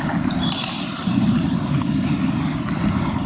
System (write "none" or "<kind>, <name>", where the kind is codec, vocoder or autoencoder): none